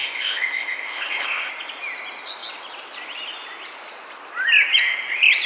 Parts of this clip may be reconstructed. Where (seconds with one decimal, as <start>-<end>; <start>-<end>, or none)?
0.0-1.5